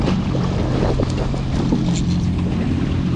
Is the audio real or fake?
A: real